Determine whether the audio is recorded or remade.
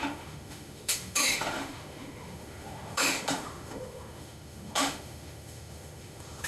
remade